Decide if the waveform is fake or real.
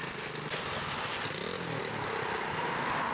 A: real